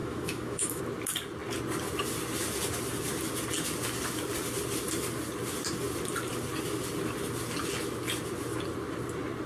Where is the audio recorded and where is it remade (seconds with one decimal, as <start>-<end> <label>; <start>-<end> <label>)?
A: 0.0-0.8 remade; 0.8-9.5 recorded